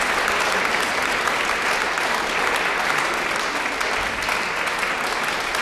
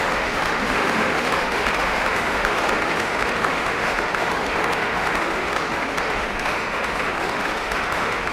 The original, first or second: first